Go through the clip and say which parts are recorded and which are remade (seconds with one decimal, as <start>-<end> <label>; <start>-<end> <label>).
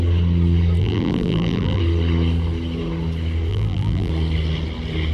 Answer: 0.0-0.8 recorded; 0.8-1.8 remade; 1.8-3.5 recorded; 3.5-4.1 remade; 4.1-5.1 recorded